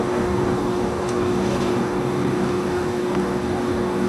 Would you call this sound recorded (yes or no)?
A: no